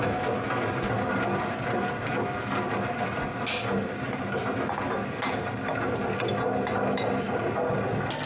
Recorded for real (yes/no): yes